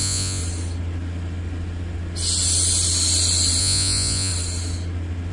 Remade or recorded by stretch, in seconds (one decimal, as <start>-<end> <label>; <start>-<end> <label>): 0.0-0.4 remade; 0.4-3.6 recorded; 3.6-4.3 remade; 4.3-5.3 recorded